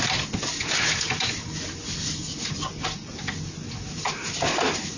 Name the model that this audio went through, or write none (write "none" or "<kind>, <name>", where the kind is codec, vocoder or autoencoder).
none